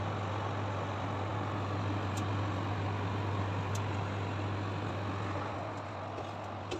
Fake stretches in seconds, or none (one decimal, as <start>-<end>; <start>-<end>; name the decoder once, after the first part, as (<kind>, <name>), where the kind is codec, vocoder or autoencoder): none